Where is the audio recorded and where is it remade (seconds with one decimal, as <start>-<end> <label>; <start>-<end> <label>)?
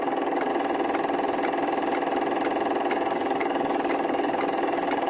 0.0-0.5 remade; 0.5-2.9 recorded; 2.9-5.1 remade